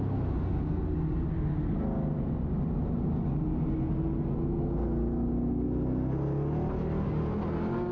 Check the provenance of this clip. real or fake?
real